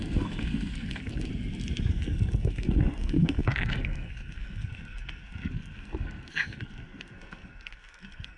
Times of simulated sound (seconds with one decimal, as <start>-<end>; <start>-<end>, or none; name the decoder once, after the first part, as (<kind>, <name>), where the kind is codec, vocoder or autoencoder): 0.0-1.3 (codec, SNAC); 1.9-8.4